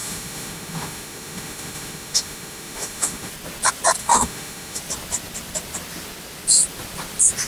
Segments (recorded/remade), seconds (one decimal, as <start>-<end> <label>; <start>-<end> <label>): 0.0-3.3 remade; 3.3-4.0 recorded; 4.0-4.8 remade; 4.8-7.5 recorded